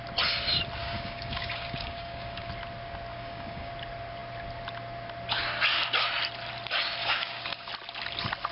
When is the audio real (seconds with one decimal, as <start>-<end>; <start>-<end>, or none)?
0.0-0.8; 2.5-3.1; 3.7-7.0; 7.7-8.5